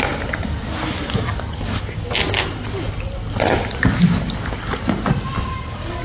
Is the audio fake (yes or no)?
no